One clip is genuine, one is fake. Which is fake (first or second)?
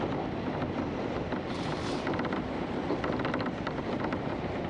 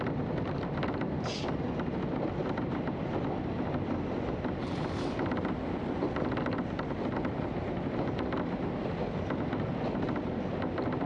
first